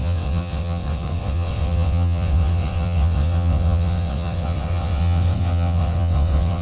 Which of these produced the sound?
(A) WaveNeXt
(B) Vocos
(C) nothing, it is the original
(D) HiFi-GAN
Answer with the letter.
A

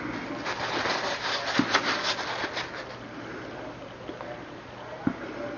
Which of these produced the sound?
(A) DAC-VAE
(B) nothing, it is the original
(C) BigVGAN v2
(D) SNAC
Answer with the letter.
B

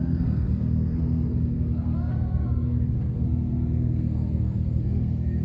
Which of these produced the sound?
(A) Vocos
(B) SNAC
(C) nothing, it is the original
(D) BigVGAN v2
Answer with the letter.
B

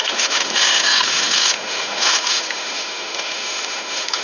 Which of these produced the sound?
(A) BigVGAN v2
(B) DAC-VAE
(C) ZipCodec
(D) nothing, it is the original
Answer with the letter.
B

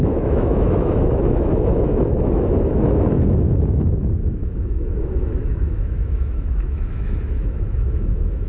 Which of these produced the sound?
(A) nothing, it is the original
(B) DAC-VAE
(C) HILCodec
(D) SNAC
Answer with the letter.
B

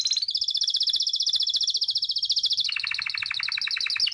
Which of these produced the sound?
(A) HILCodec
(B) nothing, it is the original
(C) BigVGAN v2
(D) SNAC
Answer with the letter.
B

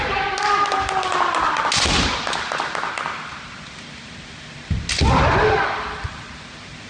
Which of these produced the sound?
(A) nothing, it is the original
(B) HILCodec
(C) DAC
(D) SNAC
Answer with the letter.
A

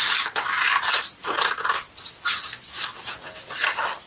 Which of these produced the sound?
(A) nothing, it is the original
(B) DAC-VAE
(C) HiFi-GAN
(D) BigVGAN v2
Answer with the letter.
A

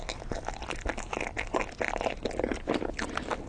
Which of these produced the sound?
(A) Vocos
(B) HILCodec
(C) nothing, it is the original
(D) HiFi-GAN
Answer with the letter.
C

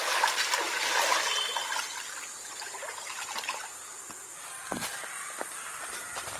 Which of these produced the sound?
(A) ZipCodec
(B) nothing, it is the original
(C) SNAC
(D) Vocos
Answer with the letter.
B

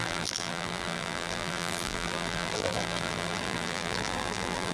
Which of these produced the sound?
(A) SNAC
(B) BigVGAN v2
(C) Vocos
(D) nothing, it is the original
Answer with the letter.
B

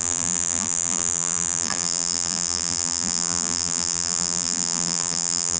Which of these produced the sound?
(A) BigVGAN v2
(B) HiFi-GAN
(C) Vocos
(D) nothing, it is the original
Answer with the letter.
A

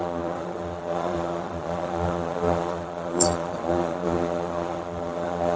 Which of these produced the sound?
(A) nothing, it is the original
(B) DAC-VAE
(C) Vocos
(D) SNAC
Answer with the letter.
C